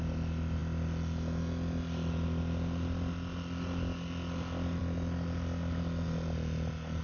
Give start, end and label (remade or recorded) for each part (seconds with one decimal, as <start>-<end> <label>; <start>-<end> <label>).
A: 0.0-7.0 recorded